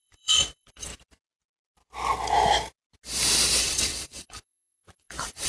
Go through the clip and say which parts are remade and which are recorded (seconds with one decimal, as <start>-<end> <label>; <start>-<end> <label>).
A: 0.0-0.9 remade; 0.9-3.6 recorded; 3.6-5.5 remade